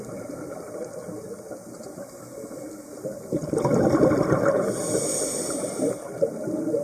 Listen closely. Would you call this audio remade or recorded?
recorded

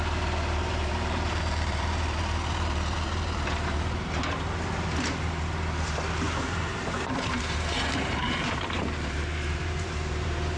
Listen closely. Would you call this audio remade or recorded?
remade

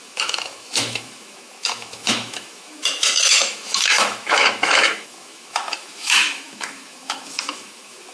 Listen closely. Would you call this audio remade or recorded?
remade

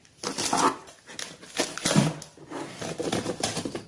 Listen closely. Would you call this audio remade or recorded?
recorded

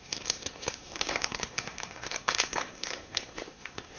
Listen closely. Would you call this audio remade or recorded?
remade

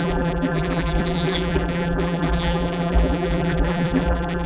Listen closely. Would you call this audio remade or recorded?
remade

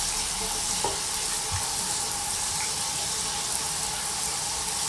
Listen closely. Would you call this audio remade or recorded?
recorded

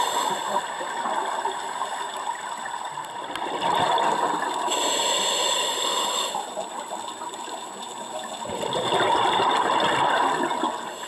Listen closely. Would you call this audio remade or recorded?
recorded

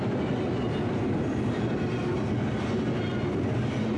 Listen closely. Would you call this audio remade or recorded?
recorded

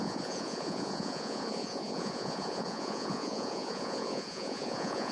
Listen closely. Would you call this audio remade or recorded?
remade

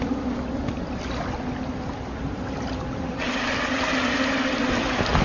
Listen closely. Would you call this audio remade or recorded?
recorded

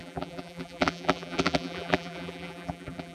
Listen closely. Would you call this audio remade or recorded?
remade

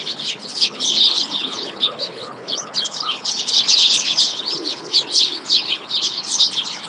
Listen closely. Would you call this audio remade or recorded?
remade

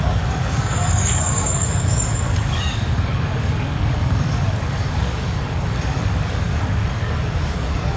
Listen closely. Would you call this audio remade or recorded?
remade